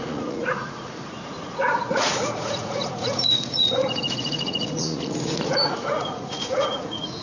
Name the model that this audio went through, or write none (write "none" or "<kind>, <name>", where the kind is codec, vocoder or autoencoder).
vocoder, Vocos